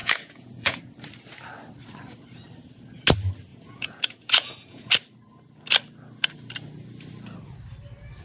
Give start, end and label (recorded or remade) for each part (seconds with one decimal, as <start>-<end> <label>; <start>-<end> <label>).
0.0-0.8 remade; 0.8-3.5 recorded; 3.5-4.9 remade; 4.9-8.2 recorded